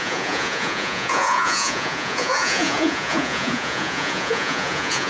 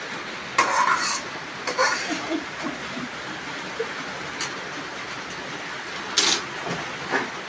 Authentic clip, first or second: second